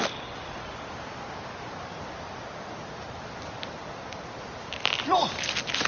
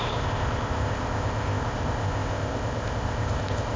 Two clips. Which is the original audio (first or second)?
first